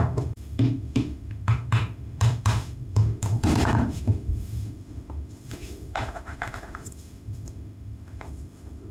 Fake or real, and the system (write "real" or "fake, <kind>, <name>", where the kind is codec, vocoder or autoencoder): fake, autoencoder, DAC-VAE